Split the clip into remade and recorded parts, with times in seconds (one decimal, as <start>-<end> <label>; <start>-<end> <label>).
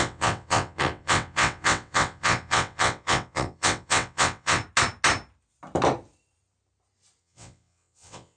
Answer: 0.0-4.6 remade; 4.6-7.2 recorded; 7.2-8.4 remade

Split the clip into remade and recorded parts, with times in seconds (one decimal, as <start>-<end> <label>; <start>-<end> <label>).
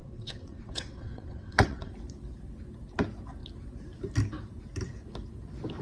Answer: 0.0-1.9 remade; 1.9-5.8 recorded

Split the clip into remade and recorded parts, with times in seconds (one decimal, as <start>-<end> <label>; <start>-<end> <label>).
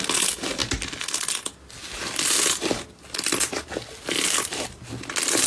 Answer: 0.0-5.5 recorded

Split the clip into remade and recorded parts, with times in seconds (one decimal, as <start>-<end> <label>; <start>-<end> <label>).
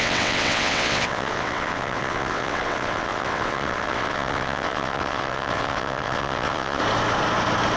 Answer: 0.0-6.8 remade; 6.8-7.8 recorded